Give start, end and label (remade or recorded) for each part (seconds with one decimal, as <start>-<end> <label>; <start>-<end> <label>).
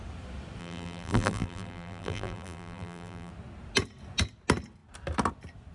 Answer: 0.0-0.6 recorded; 0.6-3.3 remade; 3.3-5.7 recorded